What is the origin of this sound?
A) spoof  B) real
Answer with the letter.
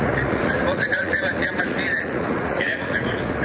A